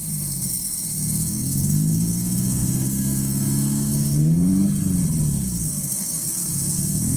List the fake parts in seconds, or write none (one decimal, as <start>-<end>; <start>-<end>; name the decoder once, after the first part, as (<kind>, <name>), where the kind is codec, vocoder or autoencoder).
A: 0.0-4.5 (codec, SNAC); 5.6-7.2

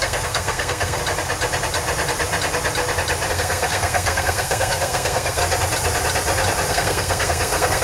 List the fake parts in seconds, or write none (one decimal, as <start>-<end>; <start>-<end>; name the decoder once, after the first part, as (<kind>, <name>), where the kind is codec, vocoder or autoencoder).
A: 0.0-1.0 (codec, SNAC); 3.3-5.4; 6.7-7.8

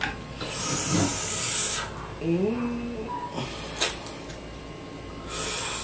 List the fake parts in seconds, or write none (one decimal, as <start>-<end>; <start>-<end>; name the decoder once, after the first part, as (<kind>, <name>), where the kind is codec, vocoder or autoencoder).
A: none

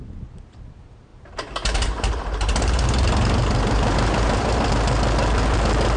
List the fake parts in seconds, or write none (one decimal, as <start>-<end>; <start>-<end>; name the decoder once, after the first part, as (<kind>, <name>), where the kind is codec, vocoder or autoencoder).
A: 1.1-4.7 (vocoder, BigVGAN v2)

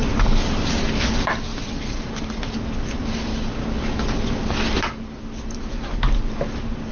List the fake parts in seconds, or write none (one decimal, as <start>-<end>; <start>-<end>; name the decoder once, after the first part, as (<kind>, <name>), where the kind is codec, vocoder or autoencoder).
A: none

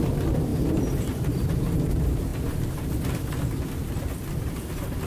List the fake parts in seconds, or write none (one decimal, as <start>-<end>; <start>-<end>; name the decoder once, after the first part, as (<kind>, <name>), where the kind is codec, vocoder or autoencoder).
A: 0.5-1.5 (vocoder, BigVGAN v2); 2.3-5.1